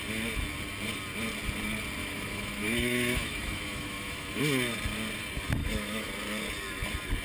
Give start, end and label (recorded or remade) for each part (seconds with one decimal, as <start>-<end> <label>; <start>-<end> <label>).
0.0-2.0 recorded; 2.0-4.4 remade; 4.4-5.6 recorded; 5.6-6.1 remade; 6.1-7.2 recorded